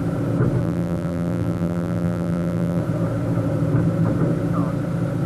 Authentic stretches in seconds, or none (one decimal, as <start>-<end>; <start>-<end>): 0.0-0.6; 2.8-5.3